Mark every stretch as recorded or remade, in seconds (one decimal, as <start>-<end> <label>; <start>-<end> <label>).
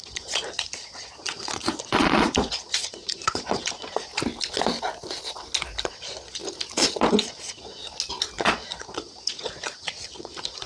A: 0.0-4.1 remade; 4.1-5.9 recorded; 5.9-6.4 remade; 6.4-7.1 recorded; 7.1-7.8 remade; 7.8-8.4 recorded; 8.4-10.7 remade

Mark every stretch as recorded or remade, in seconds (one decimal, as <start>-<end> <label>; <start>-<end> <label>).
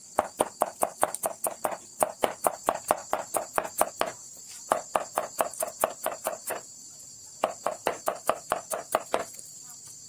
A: 0.0-10.1 recorded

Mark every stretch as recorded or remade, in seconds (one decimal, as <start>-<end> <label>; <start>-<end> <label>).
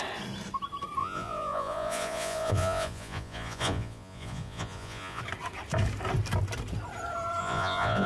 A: 0.0-1.0 recorded; 1.0-5.2 remade; 5.2-7.4 recorded; 7.4-8.1 remade